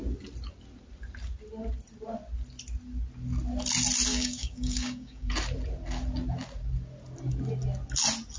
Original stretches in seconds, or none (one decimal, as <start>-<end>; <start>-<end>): 0.0-4.1; 5.3-8.4